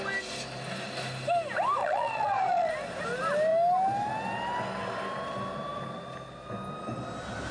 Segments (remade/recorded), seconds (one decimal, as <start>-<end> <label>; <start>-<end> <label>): 0.0-1.8 recorded; 1.8-2.7 remade; 2.7-7.5 recorded

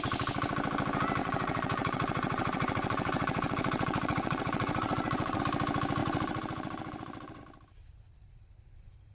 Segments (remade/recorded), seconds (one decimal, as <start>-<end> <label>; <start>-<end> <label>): 0.0-1.2 recorded; 1.2-5.4 remade; 5.4-6.0 recorded; 6.0-7.4 remade; 7.4-9.1 recorded

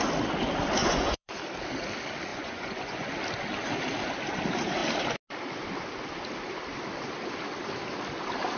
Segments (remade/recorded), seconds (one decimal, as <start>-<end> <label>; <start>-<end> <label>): 0.0-0.8 recorded; 0.8-1.4 remade; 1.4-2.3 recorded; 2.3-3.1 remade; 3.1-8.6 recorded

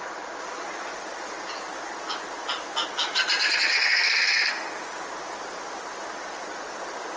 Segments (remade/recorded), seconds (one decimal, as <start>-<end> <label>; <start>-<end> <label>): 0.0-3.7 recorded; 3.7-4.7 remade; 4.7-7.2 recorded

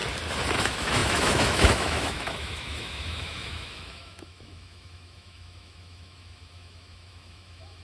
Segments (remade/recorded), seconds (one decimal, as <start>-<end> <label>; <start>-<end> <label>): 0.0-0.6 recorded; 0.6-7.8 remade

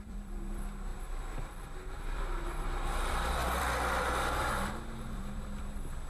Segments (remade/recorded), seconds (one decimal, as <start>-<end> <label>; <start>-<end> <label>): 0.0-6.1 remade

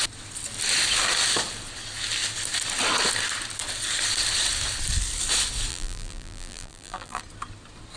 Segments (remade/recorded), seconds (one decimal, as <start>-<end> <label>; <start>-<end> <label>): 0.0-5.7 recorded; 5.7-7.2 remade; 7.2-8.0 recorded